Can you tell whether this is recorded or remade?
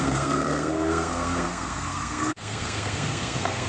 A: remade